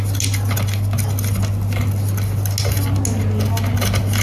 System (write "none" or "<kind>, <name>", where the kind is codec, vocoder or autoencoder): none